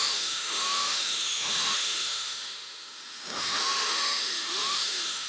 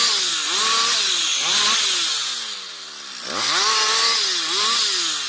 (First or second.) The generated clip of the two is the first